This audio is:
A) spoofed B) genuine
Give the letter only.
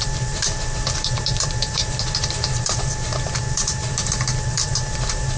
A